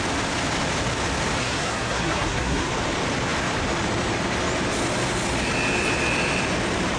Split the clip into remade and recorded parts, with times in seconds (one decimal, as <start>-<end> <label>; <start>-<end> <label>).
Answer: 0.0-1.4 recorded; 1.4-2.7 remade; 2.7-7.0 recorded